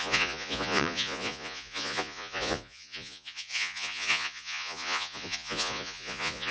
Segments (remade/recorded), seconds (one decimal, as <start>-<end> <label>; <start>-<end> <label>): 0.0-6.5 remade

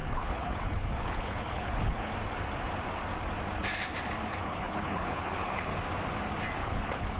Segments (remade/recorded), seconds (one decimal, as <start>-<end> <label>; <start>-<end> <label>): 0.0-2.1 remade; 2.1-4.3 recorded; 4.3-5.7 remade; 5.7-6.6 recorded; 6.6-7.2 remade

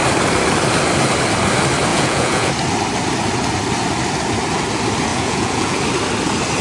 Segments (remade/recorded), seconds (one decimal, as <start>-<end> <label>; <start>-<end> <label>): 0.0-1.9 recorded; 1.9-2.5 remade; 2.5-5.1 recorded; 5.1-5.8 remade; 5.8-6.6 recorded

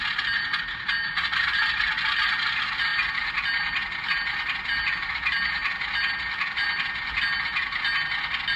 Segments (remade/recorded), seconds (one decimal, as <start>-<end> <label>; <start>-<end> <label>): 0.0-8.6 recorded

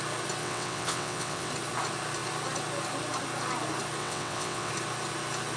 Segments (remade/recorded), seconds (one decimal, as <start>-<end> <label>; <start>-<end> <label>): 0.0-0.4 recorded; 0.4-1.5 remade; 1.5-4.0 recorded; 4.0-4.7 remade; 4.7-5.6 recorded

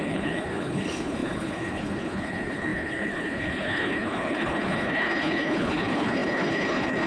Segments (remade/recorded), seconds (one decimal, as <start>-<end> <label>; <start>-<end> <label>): 0.0-7.1 remade